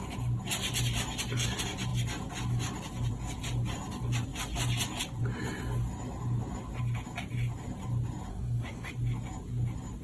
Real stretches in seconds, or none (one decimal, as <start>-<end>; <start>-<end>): 0.0-8.3; 8.9-10.0